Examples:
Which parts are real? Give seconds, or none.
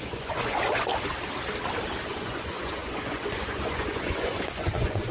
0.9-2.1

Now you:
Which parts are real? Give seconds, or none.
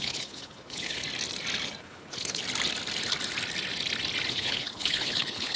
1.0-1.8; 2.4-4.3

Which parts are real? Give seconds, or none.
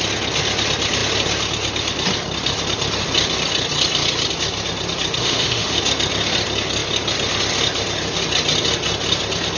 0.0-5.2; 5.8-9.6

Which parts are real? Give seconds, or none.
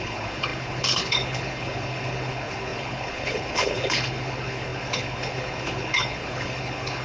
none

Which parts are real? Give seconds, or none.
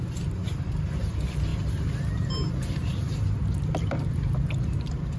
none